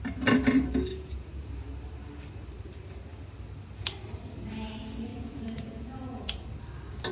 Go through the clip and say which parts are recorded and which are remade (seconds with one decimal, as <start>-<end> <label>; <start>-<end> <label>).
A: 0.0-0.9 recorded; 0.9-1.5 remade; 1.5-5.1 recorded; 5.1-6.5 remade; 6.5-7.1 recorded